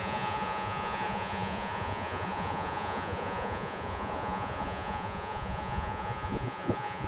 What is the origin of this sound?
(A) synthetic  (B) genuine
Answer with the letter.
A